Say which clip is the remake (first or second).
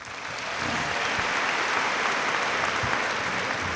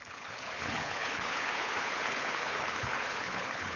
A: second